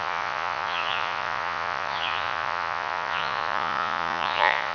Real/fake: fake